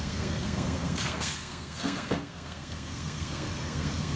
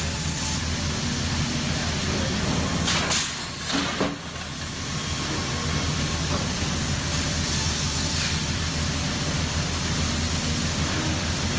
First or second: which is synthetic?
first